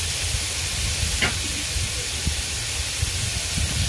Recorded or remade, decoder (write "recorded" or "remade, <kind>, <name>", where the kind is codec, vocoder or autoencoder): recorded